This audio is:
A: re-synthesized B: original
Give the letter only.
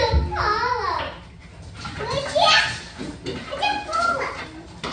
B